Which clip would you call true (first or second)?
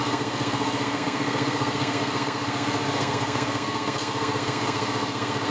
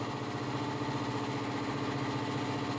second